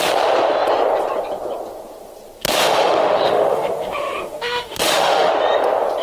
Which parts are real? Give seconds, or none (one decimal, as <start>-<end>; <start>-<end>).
0.0-2.6; 5.3-6.0